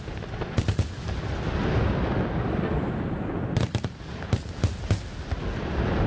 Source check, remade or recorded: recorded